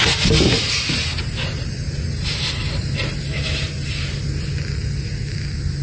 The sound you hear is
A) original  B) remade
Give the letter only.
A